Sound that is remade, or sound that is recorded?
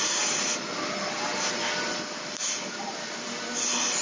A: recorded